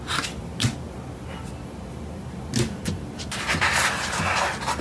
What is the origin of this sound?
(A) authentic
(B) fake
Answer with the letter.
A